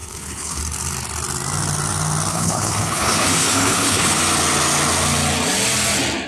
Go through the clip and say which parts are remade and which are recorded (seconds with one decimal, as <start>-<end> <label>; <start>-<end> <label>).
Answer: 0.0-0.6 remade; 0.6-2.3 recorded; 2.3-4.2 remade; 4.2-6.3 recorded